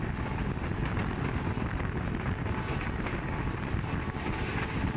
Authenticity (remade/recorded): recorded